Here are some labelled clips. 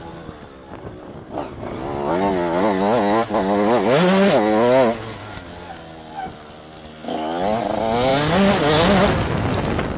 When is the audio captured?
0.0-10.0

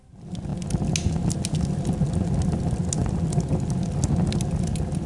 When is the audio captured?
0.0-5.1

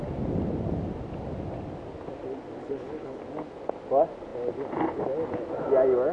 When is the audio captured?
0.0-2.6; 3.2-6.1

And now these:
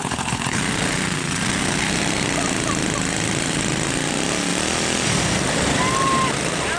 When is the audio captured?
0.6-6.8